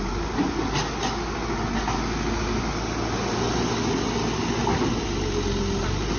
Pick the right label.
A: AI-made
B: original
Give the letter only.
B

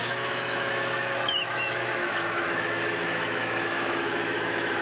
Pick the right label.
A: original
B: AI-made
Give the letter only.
B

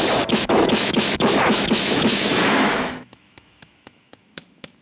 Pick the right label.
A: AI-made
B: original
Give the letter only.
A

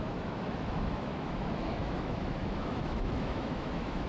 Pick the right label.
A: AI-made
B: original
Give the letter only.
A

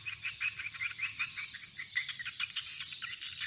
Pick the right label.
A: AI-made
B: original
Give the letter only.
B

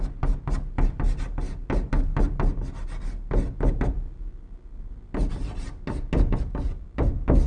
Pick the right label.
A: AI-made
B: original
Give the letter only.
B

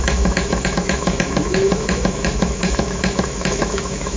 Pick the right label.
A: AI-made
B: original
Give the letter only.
A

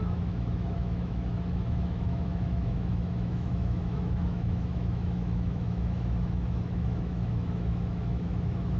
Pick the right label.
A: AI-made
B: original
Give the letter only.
A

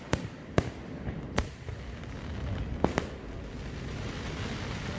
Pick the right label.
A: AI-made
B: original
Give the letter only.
B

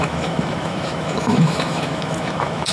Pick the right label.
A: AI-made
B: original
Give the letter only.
A